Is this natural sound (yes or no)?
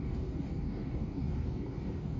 no